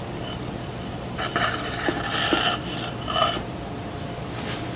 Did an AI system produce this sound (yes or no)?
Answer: yes